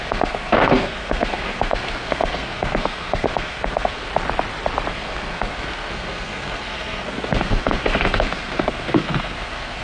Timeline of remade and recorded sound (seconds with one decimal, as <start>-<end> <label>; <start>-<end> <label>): 0.0-4.1 remade; 4.1-4.9 recorded; 4.9-9.8 remade